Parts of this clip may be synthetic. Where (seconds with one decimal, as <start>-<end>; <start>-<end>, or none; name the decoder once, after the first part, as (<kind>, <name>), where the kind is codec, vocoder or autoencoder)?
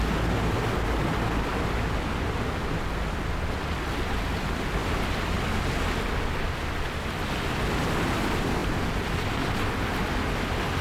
none